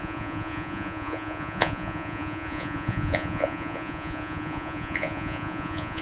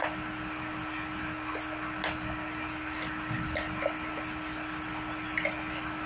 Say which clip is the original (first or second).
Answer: second